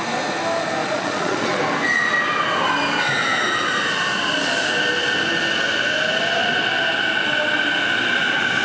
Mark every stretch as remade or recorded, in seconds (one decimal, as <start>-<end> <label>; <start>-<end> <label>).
0.0-0.8 recorded; 0.8-1.6 remade; 1.6-8.6 recorded